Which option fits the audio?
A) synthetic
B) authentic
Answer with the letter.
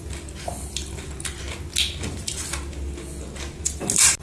B